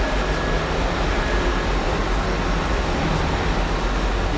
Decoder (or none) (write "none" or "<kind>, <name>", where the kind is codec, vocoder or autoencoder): none